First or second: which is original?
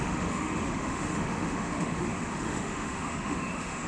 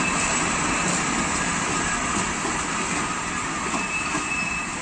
second